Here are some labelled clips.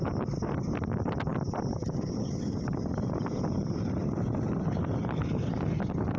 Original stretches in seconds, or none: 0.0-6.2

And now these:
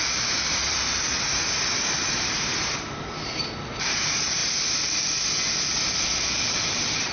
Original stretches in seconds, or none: 4.4-6.5

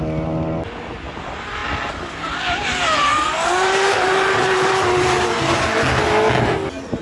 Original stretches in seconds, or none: 0.0-3.1; 6.0-7.0

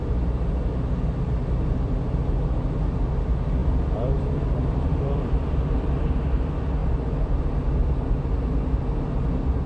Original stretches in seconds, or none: 0.0-3.6; 6.1-6.8; 7.4-9.7

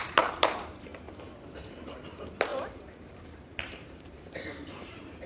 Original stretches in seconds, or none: 0.9-1.5

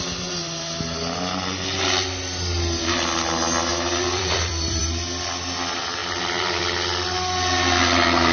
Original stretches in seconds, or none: 0.0-3.7; 4.8-6.0; 6.6-8.3